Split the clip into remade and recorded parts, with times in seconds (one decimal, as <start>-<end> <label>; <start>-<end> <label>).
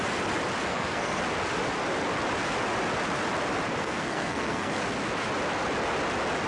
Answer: 0.0-0.7 recorded; 0.7-1.2 remade; 1.2-3.8 recorded; 3.8-4.8 remade; 4.8-6.5 recorded